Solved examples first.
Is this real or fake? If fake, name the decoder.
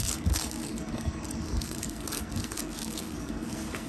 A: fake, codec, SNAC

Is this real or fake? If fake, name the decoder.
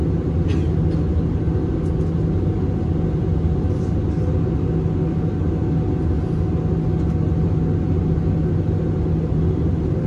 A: real